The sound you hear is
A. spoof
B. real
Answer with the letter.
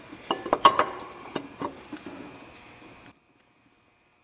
A